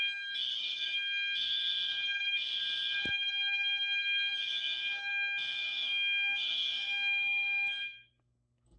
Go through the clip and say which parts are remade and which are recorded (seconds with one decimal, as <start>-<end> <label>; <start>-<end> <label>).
0.0-1.7 remade; 1.7-4.0 recorded; 4.0-5.1 remade; 5.1-5.6 recorded; 5.6-8.8 remade